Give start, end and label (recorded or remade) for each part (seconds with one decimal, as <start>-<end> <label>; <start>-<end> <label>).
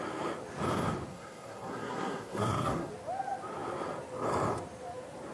0.0-1.1 recorded; 1.1-2.9 remade; 2.9-5.3 recorded